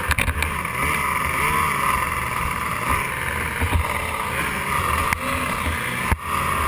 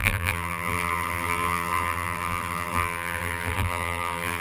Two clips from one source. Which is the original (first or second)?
first